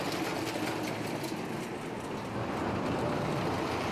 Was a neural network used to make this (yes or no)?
no